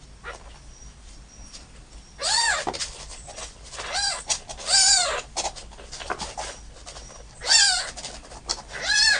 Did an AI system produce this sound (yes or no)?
yes